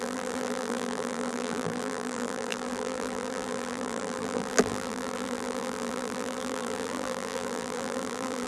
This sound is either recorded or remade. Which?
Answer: remade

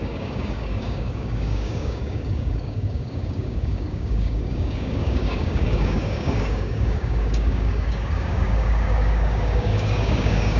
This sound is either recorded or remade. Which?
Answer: remade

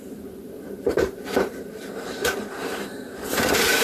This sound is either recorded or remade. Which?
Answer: remade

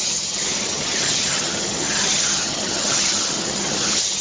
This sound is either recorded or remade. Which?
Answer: remade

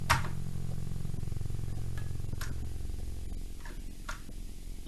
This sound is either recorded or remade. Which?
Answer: recorded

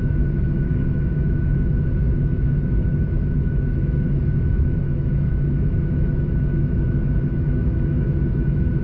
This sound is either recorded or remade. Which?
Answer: remade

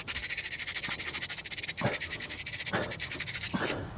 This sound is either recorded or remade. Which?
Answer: recorded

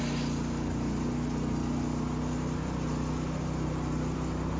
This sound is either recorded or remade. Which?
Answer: recorded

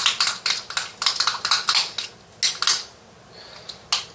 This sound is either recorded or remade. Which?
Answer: recorded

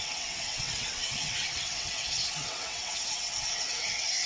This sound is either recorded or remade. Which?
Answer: remade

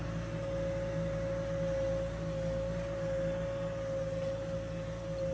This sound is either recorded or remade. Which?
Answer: recorded